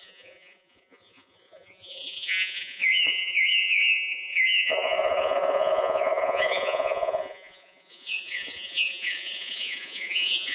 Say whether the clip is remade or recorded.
remade